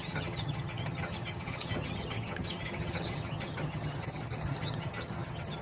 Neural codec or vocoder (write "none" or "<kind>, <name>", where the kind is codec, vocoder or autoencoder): vocoder, HiFi-GAN